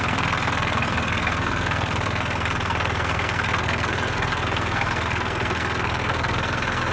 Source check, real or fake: fake